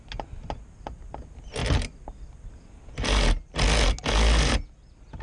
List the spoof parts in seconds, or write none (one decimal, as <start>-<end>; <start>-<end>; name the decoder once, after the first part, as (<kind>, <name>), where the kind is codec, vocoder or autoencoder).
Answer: none